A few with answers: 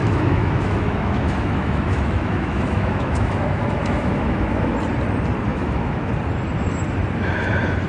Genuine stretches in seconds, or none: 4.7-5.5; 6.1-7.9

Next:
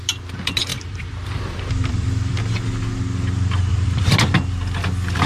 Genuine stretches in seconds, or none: 0.0-0.7; 2.4-3.7; 4.2-5.3

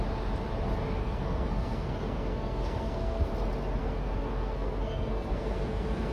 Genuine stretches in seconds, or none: 0.0-1.0; 3.3-3.8

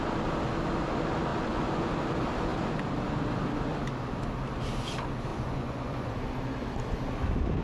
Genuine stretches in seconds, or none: 0.0-1.3; 1.9-5.3; 6.1-7.6

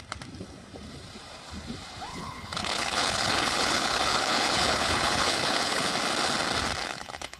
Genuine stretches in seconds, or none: 0.0-2.1; 5.9-6.8

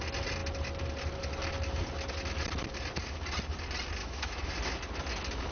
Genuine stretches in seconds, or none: 0.0-4.0; 4.5-5.5